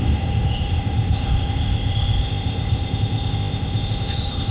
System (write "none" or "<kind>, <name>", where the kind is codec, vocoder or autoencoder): codec, ZipCodec